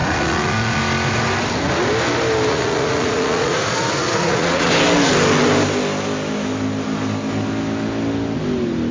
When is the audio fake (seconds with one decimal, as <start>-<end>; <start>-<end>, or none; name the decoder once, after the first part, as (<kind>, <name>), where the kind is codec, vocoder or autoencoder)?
0.0-0.8 (vocoder, Vocos); 2.5-4.7